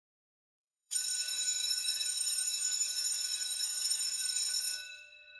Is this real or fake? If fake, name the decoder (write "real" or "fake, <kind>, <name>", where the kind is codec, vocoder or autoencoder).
fake, codec, SNAC